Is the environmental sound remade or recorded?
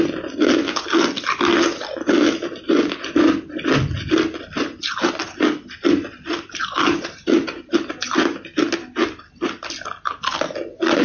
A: recorded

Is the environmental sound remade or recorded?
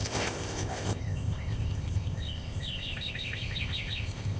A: remade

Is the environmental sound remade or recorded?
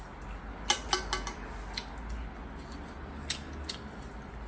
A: recorded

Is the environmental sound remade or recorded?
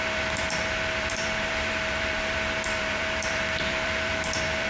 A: remade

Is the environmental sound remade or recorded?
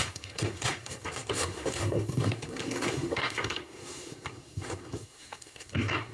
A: remade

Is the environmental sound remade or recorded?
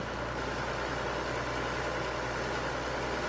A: recorded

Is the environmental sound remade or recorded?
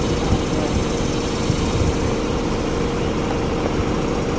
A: recorded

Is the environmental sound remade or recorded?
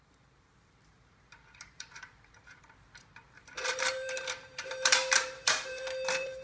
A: remade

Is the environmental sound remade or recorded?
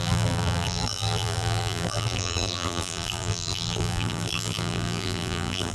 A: remade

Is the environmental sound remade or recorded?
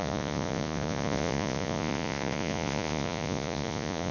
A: remade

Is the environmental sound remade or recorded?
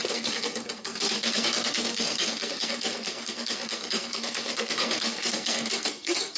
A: remade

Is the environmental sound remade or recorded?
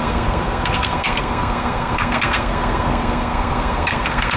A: remade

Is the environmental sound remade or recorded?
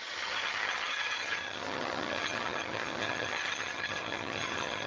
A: remade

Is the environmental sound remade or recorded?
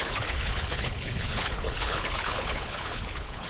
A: remade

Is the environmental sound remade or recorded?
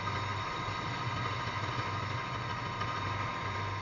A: recorded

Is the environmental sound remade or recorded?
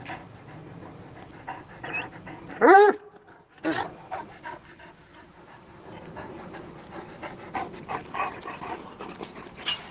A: remade